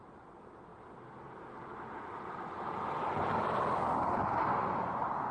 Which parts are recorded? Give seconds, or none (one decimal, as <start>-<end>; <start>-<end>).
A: 0.0-4.6